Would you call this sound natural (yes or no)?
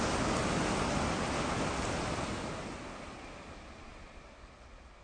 yes